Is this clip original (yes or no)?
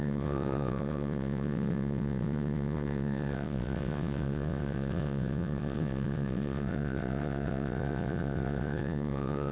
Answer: no